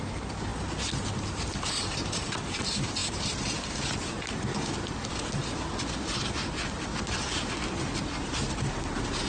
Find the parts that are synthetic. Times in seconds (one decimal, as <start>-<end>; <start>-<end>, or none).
none